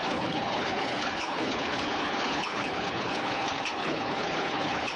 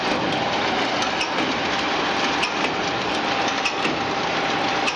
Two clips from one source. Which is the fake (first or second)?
first